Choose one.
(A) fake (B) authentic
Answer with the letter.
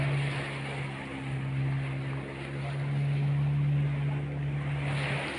B